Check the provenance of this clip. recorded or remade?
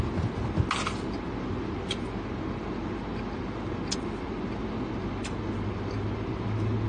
recorded